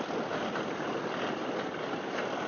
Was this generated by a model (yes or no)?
no